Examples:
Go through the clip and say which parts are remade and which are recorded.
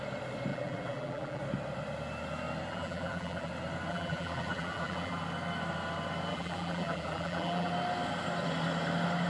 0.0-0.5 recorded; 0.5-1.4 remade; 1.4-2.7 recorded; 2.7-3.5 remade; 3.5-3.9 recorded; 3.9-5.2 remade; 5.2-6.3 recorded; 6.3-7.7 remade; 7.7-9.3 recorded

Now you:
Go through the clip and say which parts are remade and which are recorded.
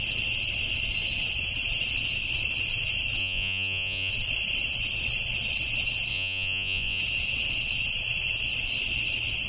0.0-3.2 recorded; 3.2-4.1 remade; 4.1-6.1 recorded; 6.1-7.0 remade; 7.0-9.5 recorded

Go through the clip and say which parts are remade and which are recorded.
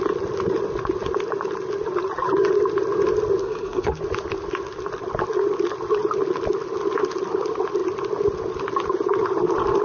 0.0-3.4 recorded; 3.4-4.0 remade; 4.0-9.8 recorded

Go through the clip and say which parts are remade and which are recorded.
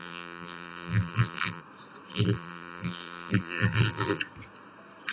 0.0-1.6 remade; 1.6-2.1 recorded; 2.1-4.2 remade; 4.2-5.1 recorded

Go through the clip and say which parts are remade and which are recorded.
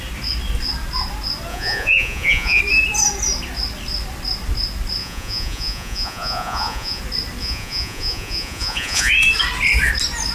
0.0-1.5 recorded; 1.5-2.6 remade; 2.6-5.0 recorded; 5.0-7.0 remade; 7.0-7.4 recorded; 7.4-9.1 remade; 9.1-10.3 recorded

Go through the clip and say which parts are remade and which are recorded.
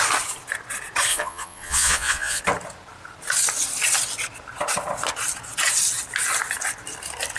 0.0-1.1 recorded; 1.1-2.4 remade; 2.4-7.4 recorded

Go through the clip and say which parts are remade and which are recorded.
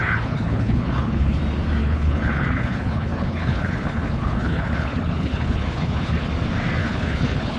0.0-1.4 remade; 1.4-1.8 recorded; 1.8-6.3 remade; 6.3-6.8 recorded; 6.8-7.6 remade